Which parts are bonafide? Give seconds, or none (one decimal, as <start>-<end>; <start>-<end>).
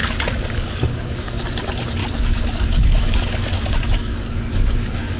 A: 1.4-2.0